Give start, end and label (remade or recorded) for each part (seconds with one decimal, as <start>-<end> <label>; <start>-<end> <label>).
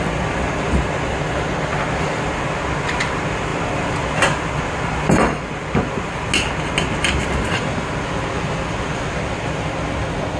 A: 0.0-10.4 recorded